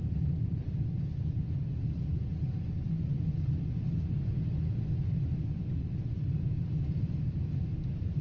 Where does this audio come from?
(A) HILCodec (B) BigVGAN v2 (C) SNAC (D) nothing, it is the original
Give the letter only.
D